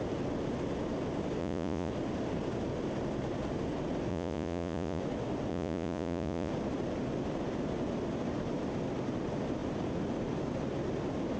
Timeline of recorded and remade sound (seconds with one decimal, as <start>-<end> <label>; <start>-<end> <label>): 0.0-1.4 recorded; 1.4-1.9 remade; 1.9-4.1 recorded; 4.1-5.0 remade; 5.0-5.5 recorded; 5.5-6.5 remade; 6.5-11.4 recorded